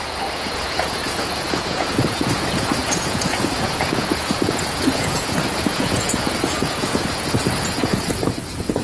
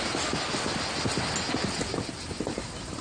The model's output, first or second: first